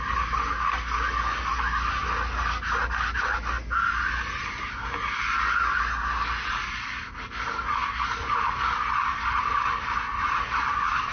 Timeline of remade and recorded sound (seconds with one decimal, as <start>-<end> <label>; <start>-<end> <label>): 0.0-11.1 recorded